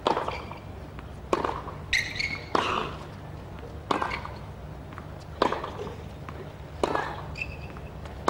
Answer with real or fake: real